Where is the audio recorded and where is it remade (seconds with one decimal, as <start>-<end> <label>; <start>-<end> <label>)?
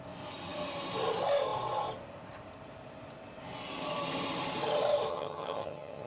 0.0-5.1 recorded; 5.1-6.1 remade